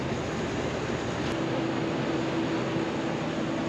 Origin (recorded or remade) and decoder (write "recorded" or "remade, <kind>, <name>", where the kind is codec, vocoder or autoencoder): recorded